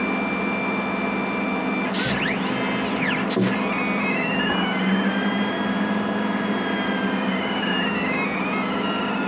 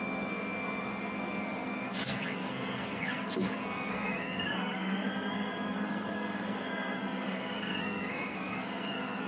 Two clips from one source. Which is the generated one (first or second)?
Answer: second